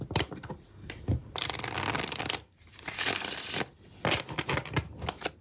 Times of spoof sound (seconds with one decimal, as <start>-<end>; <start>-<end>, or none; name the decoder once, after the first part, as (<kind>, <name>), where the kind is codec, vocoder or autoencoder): none